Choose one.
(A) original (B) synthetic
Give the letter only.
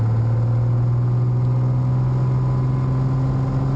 A